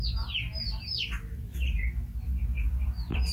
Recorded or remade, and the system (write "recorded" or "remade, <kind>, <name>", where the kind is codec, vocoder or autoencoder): recorded